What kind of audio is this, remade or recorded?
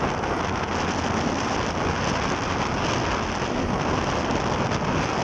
recorded